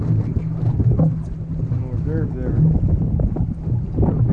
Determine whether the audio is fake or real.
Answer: real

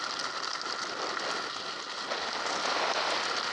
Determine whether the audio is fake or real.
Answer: real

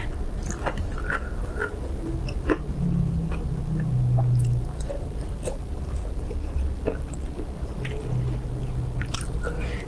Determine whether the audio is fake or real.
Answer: real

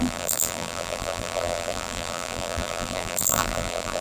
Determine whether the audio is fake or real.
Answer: fake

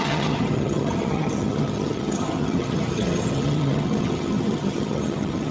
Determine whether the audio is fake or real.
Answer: fake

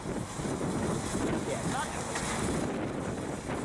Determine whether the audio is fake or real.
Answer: real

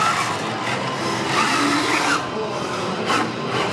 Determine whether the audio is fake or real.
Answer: real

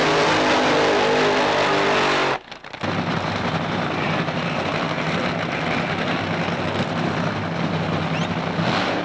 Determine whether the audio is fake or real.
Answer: real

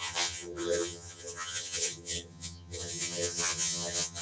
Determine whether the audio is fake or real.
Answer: fake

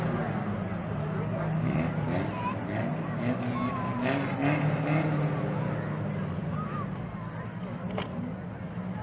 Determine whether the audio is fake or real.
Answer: real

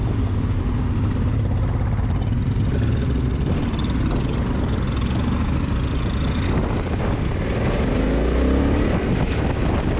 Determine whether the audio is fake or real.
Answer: real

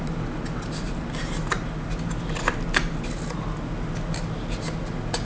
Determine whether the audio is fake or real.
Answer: real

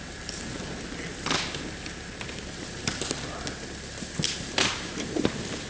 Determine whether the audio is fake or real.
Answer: real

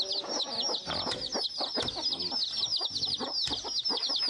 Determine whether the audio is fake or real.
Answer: real